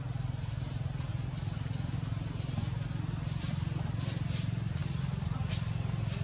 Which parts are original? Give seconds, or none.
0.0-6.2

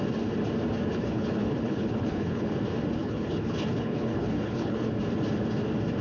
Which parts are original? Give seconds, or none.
0.0-0.9; 2.5-3.0; 4.9-6.0

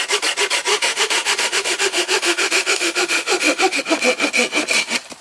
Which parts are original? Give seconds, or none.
0.0-0.7; 3.8-5.2